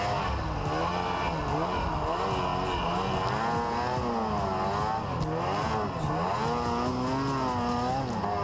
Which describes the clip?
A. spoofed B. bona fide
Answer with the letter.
B